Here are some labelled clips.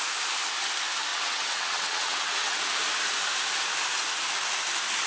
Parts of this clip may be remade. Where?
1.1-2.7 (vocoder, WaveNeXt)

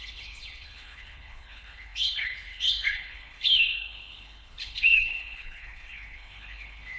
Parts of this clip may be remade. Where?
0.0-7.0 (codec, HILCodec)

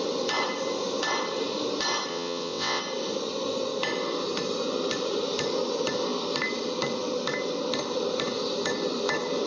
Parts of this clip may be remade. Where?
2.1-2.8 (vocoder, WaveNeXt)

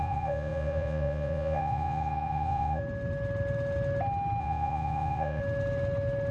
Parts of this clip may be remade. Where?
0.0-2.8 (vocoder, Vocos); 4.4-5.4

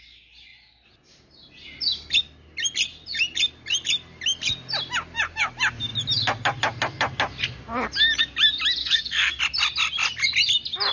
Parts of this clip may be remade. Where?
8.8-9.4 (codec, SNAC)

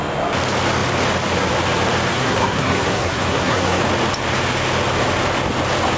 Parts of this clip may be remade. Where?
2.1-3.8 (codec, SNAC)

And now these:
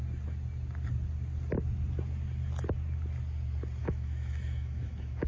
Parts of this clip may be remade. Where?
3.8-5.3 (autoencoder, DAC-VAE)

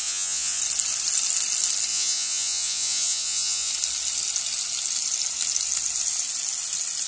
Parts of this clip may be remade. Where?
0.0-0.6 (vocoder, Vocos); 1.9-3.7